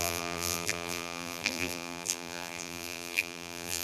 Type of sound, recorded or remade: remade